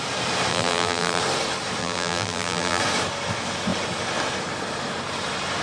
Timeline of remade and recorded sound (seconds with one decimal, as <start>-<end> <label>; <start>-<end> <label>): 0.0-0.5 recorded; 0.5-1.2 remade; 1.2-1.8 recorded; 1.8-2.8 remade; 2.8-5.6 recorded